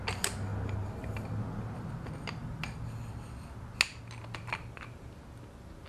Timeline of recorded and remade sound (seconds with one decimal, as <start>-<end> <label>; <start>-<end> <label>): 0.0-5.9 recorded